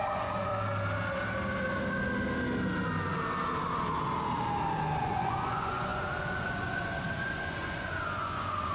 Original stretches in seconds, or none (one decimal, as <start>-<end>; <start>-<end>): 0.5-5.0